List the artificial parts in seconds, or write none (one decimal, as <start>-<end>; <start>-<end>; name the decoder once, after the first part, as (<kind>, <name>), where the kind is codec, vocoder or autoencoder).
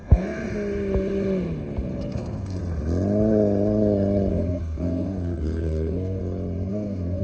0.0-0.4 (codec, SNAC); 2.0-2.6; 4.3-6.2; 6.7-7.2